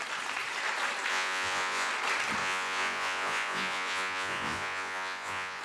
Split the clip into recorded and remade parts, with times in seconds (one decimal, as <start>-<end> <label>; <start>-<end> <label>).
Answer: 0.0-1.1 recorded; 1.1-1.9 remade; 1.9-2.4 recorded; 2.4-5.6 remade